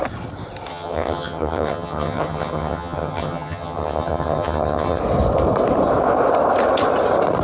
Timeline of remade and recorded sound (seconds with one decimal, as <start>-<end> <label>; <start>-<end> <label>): 0.0-0.7 recorded; 0.7-5.0 remade; 5.0-7.4 recorded